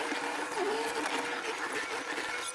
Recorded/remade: recorded